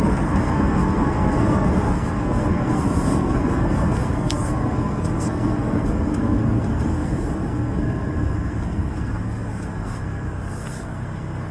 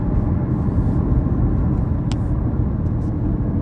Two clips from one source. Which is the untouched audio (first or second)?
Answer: second